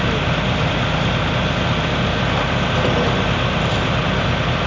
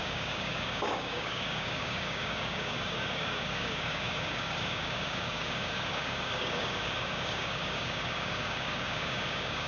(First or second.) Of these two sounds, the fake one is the second